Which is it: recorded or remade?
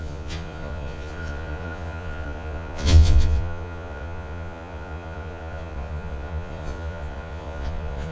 remade